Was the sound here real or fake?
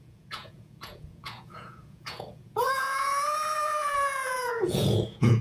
fake